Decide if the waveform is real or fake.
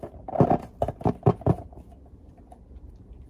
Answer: real